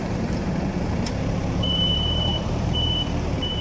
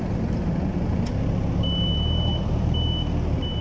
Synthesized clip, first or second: first